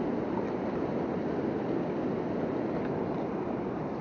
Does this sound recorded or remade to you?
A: recorded